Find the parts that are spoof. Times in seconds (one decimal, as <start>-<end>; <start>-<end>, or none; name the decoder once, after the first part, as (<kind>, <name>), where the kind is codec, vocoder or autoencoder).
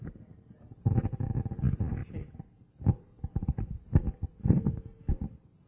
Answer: 4.4-5.1 (codec, SNAC)